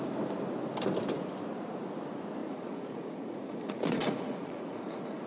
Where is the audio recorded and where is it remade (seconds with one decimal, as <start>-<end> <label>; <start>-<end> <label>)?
0.0-2.4 recorded; 2.4-5.3 remade